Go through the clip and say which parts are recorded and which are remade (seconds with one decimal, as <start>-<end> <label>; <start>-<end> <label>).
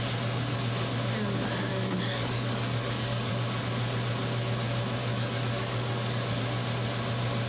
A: 0.0-1.7 recorded; 1.7-3.3 remade; 3.3-5.0 recorded; 5.0-6.4 remade; 6.4-7.5 recorded